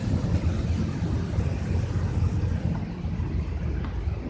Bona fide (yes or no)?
yes